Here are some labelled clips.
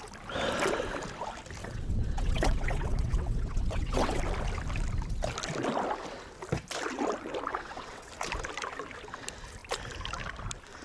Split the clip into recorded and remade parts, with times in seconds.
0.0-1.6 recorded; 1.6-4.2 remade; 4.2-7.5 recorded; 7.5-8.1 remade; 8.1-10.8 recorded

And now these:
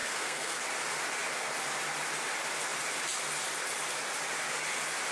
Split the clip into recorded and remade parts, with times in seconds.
0.0-0.6 remade; 0.6-5.1 recorded

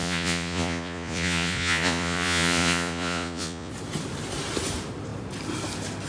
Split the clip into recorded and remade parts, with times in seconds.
0.0-3.7 remade; 3.7-6.1 recorded

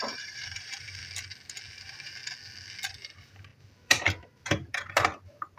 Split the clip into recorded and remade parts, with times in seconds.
0.0-1.0 remade; 1.0-1.7 recorded; 1.7-2.2 remade; 2.2-3.0 recorded; 3.0-5.6 remade

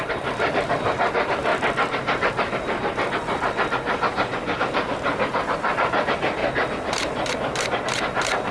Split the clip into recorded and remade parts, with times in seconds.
0.0-1.5 remade; 1.5-4.6 recorded; 4.6-6.4 remade; 6.4-7.3 recorded; 7.3-8.5 remade

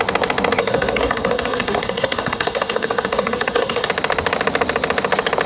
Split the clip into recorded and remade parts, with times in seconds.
0.0-0.6 recorded; 0.6-3.9 remade; 3.9-5.5 recorded